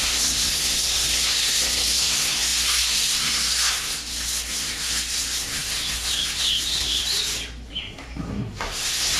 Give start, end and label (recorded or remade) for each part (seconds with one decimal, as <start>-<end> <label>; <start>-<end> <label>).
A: 0.0-7.0 remade; 7.0-7.7 recorded; 7.7-9.2 remade